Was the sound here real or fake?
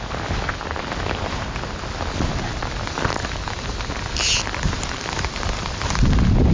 real